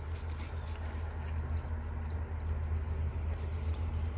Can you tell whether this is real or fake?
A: real